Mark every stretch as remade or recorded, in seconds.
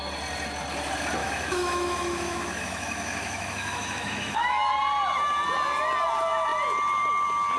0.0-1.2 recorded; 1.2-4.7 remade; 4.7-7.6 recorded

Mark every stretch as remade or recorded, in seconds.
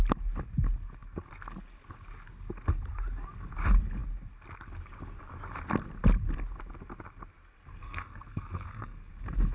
0.0-7.7 recorded; 7.7-9.1 remade; 9.1-9.5 recorded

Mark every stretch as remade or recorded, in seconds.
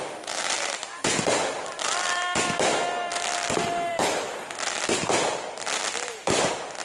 0.0-6.8 recorded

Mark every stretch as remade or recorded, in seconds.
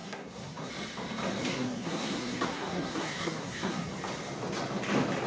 0.0-0.7 remade; 0.7-1.5 recorded; 1.5-3.9 remade; 3.9-5.3 recorded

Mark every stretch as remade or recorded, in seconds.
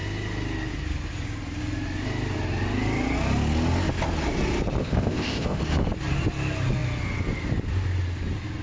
0.0-4.8 recorded; 4.8-5.6 remade; 5.6-8.6 recorded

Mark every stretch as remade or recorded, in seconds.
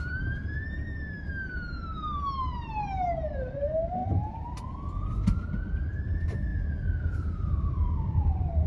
0.0-4.0 remade; 4.0-5.9 recorded; 5.9-6.5 remade; 6.5-7.2 recorded; 7.2-8.7 remade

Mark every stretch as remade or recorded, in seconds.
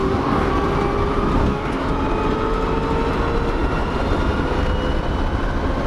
0.0-0.5 remade; 0.5-1.4 recorded; 1.4-1.9 remade; 1.9-5.9 recorded